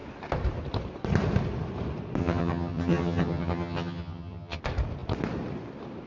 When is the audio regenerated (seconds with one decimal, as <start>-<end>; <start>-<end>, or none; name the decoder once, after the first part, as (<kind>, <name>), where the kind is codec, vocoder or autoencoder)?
2.2-4.6 (vocoder, HiFi-GAN)